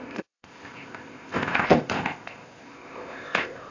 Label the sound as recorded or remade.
remade